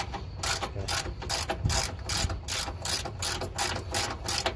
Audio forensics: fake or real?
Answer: real